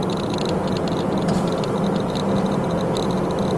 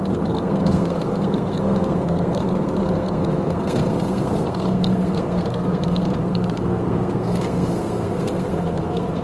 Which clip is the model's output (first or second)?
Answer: second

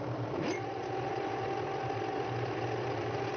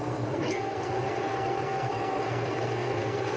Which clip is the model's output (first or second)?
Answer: second